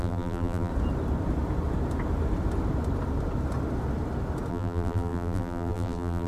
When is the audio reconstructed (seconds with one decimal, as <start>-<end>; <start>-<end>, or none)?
0.0-0.7; 4.5-6.3

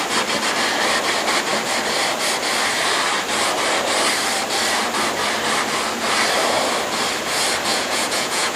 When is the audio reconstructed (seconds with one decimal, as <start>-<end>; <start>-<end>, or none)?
7.7-8.6